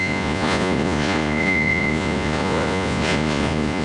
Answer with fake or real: fake